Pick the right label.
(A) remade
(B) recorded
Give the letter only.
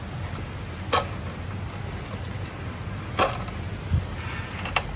B